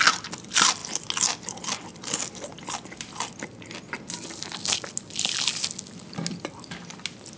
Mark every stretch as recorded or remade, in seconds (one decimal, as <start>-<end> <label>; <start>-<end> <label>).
0.0-7.4 recorded